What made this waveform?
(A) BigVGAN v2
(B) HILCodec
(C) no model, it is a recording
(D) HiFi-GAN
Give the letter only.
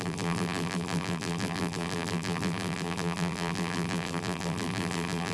A